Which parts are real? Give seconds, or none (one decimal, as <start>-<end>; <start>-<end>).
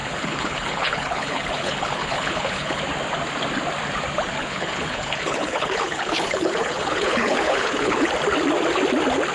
2.8-4.4; 8.1-9.3